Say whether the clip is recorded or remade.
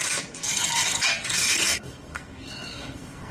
remade